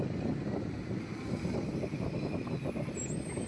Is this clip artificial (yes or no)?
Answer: no